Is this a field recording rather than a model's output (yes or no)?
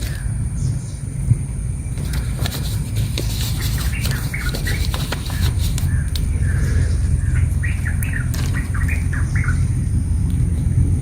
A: no